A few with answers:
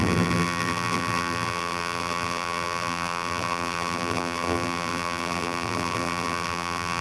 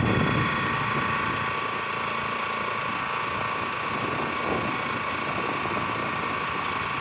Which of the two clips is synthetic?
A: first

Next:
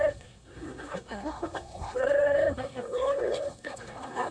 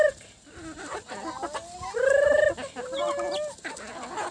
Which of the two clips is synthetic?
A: first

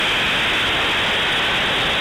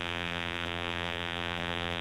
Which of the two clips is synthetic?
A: second